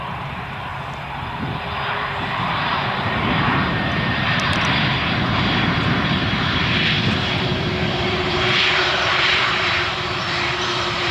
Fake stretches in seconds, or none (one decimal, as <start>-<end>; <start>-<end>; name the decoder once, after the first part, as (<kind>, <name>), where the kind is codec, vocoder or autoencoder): 0.0-0.7 (vocoder, BigVGAN v2); 1.9-11.1